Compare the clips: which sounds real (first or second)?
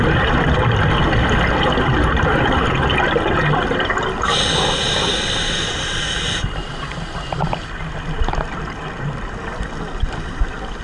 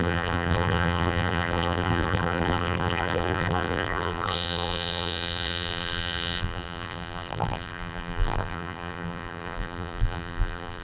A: first